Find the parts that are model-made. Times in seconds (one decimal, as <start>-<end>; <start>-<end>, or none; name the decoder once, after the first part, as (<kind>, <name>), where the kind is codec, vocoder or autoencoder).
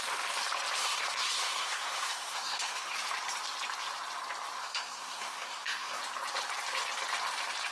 0.8-2.9 (codec, SNAC); 4.6-6.0